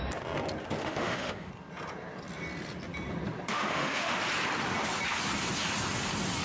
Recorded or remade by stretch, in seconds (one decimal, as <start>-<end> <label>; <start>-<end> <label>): 0.0-0.8 recorded; 0.8-1.5 remade; 1.5-3.5 recorded; 3.5-4.2 remade; 4.2-6.4 recorded